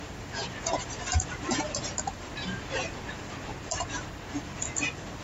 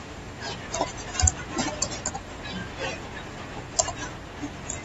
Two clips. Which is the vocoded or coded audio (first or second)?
first